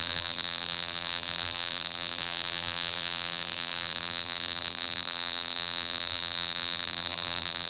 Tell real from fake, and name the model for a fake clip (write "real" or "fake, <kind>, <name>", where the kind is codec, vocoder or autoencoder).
fake, vocoder, BigVGAN v2